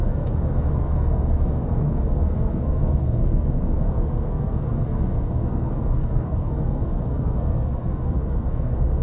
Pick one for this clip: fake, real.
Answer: fake